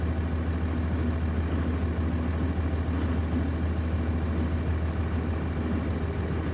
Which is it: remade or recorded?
recorded